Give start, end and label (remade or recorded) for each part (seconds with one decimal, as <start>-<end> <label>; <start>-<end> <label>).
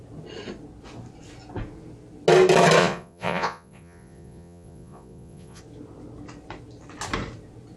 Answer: 0.0-2.8 recorded; 2.8-5.6 remade; 5.6-7.8 recorded